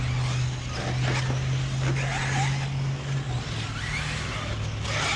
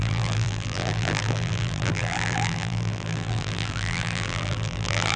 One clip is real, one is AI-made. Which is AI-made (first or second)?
second